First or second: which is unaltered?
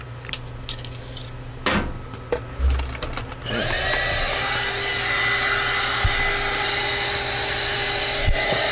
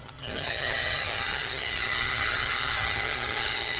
first